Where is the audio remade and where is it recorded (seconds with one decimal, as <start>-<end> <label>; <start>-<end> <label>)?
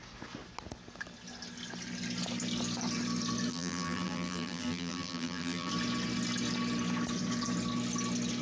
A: 0.0-3.5 recorded; 3.5-5.7 remade; 5.7-8.4 recorded